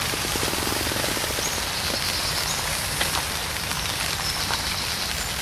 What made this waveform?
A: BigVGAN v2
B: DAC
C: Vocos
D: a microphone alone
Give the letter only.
A